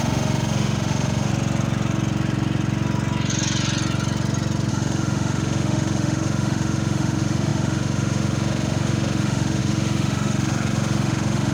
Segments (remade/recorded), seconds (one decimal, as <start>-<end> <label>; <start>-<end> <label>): 0.0-1.3 remade; 1.3-4.7 recorded; 4.7-11.5 remade